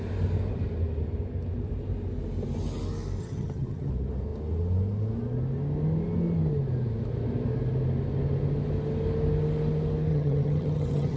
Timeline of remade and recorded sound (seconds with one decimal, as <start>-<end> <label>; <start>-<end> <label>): 0.0-3.2 recorded; 3.2-3.9 remade; 3.9-10.1 recorded; 10.1-11.2 remade